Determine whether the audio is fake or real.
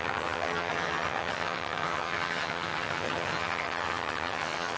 fake